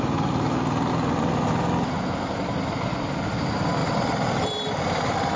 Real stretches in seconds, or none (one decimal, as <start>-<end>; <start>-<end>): 0.0-3.8; 4.8-5.4